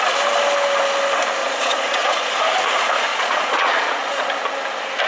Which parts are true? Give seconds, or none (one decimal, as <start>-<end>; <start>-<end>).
0.0-1.4; 2.3-3.1; 4.3-5.1